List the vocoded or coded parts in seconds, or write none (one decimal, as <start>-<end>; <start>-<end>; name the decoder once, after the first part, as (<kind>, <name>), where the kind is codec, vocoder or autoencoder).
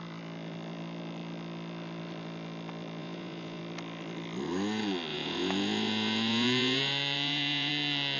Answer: 3.0-3.6 (vocoder, Vocos); 5.1-7.7